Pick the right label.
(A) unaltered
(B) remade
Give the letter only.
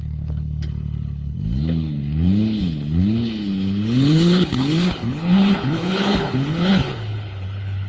B